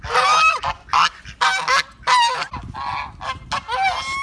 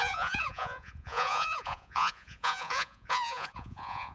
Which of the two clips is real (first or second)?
first